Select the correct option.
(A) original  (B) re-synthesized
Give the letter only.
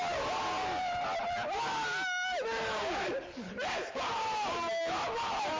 A